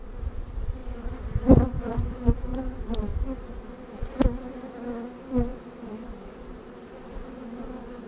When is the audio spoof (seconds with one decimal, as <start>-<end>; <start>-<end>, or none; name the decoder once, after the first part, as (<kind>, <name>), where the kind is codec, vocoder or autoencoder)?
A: 0.0-8.1 (vocoder, BigVGAN v2)